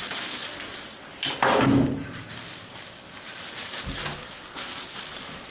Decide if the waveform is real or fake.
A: real